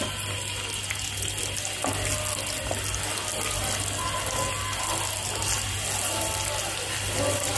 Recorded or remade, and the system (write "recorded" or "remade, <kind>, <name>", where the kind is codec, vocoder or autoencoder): recorded